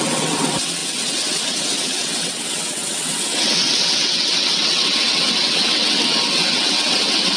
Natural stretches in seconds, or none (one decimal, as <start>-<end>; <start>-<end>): none